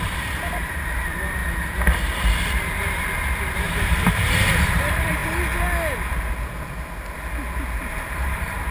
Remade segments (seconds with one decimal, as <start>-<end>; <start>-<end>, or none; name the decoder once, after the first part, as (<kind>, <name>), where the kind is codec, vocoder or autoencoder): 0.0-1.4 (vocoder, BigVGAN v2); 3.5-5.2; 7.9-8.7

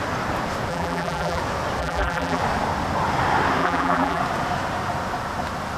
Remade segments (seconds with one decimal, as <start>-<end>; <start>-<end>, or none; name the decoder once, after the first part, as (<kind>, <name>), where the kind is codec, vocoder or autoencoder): 0.7-1.4 (vocoder, BigVGAN v2); 1.8-2.4; 3.6-4.2

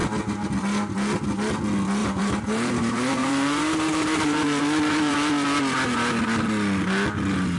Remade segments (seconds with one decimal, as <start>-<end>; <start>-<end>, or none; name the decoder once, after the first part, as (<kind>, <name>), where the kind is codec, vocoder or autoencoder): 2.0-5.1 (vocoder, BigVGAN v2)